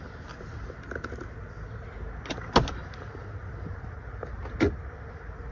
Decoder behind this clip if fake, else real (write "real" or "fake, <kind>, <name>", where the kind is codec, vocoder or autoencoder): real